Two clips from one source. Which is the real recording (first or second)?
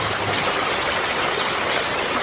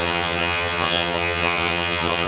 first